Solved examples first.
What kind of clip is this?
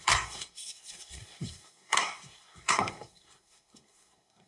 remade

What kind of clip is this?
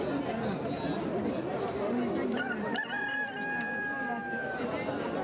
recorded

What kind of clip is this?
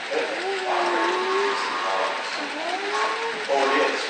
recorded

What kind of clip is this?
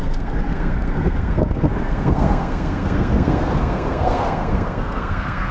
remade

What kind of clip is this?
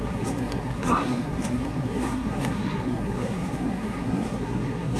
remade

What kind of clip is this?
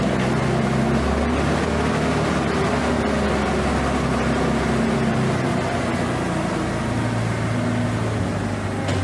recorded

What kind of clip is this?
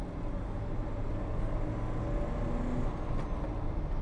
recorded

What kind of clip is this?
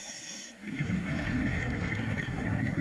remade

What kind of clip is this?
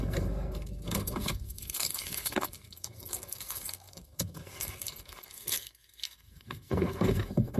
remade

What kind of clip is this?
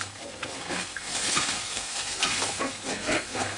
remade